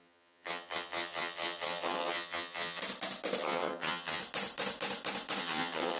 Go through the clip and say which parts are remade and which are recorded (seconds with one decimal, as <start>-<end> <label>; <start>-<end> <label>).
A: 0.0-2.8 remade; 2.8-3.4 recorded; 3.4-4.2 remade; 4.2-5.4 recorded; 5.4-6.0 remade